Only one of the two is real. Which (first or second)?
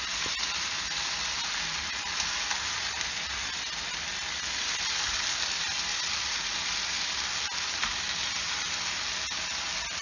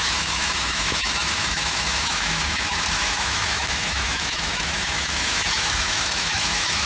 first